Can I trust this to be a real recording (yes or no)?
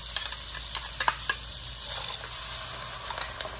yes